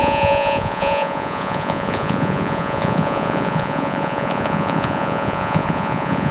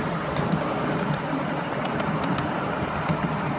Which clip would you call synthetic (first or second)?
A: first